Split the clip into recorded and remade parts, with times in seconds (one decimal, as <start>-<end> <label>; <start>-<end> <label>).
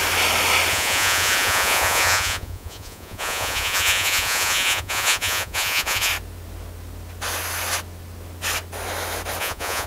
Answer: 0.0-0.7 recorded; 0.7-6.1 remade; 6.1-9.4 recorded; 9.4-9.9 remade